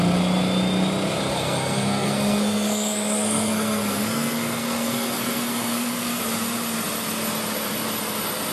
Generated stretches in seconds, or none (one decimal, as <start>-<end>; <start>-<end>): 1.3-6.2